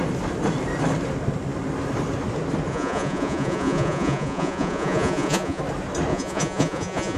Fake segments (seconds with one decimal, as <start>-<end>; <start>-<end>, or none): 2.7-5.6; 6.1-7.2